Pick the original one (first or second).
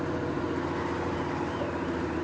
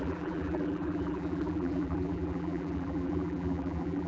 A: first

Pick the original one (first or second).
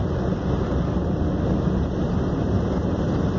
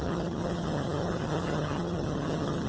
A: first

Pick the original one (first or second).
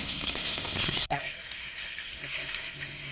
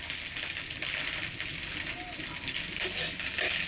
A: second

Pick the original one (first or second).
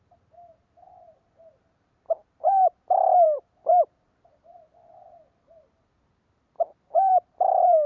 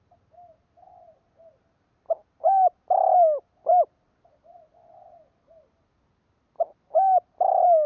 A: second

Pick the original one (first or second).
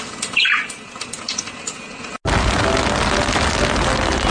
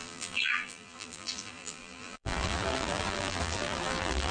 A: first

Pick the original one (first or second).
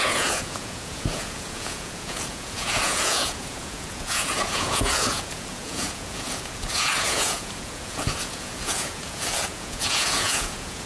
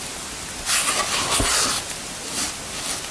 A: second